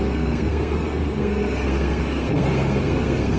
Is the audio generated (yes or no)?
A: yes